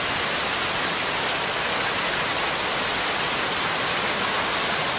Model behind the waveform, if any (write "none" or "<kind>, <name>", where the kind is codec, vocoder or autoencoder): none